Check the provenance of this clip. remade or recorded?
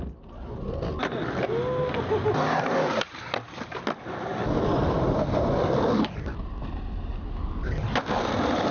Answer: recorded